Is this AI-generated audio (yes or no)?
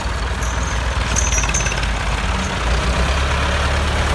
no